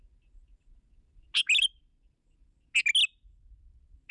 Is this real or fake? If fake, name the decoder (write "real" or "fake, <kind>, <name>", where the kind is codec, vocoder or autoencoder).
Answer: real